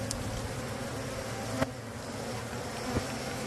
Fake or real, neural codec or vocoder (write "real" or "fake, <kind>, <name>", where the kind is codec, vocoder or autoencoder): real